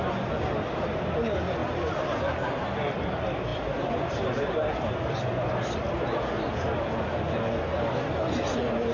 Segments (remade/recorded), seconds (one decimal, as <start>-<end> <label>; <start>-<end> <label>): 0.0-1.6 recorded; 1.6-2.2 remade; 2.2-3.5 recorded; 3.5-5.8 remade; 5.8-8.9 recorded